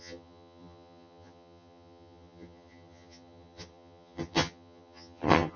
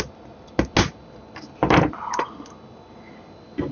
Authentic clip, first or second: second